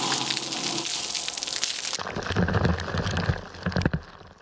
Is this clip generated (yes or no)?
no